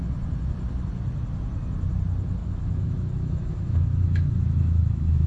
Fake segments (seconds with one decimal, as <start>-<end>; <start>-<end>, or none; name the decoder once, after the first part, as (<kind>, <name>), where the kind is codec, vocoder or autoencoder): 2.4-5.3 (autoencoder, DAC-VAE)